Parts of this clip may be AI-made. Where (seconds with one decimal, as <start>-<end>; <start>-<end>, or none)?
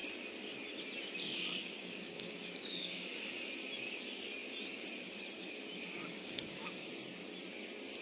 1.2-3.3; 6.0-6.9